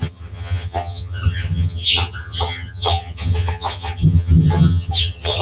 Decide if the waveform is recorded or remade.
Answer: remade